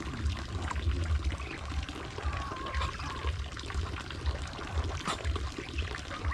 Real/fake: real